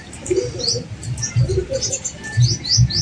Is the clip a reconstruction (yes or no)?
no